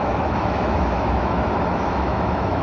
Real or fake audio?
fake